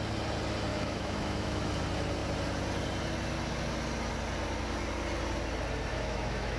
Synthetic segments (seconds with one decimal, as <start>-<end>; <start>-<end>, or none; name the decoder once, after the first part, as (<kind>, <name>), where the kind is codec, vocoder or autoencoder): 0.7-1.7 (autoencoder, DAC-VAE); 5.9-6.6